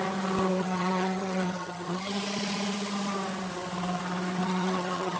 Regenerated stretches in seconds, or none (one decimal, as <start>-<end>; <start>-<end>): 0.5-2.2; 4.4-5.2